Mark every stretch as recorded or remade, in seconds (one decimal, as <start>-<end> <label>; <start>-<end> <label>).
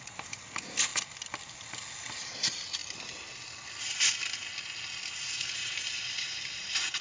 0.0-0.9 remade; 0.9-2.1 recorded; 2.1-2.8 remade; 2.8-3.9 recorded; 3.9-4.4 remade; 4.4-5.0 recorded; 5.0-7.0 remade